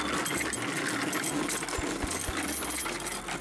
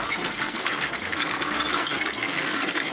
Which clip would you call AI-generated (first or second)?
second